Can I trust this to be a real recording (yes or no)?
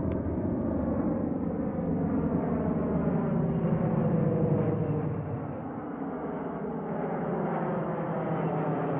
yes